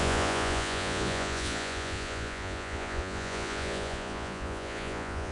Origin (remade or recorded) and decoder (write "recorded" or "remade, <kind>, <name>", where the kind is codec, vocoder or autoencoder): remade, vocoder, Vocos